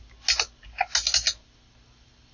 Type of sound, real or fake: real